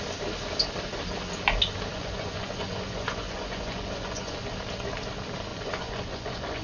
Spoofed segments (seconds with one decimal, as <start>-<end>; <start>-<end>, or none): 1.9-4.4; 5.5-6.6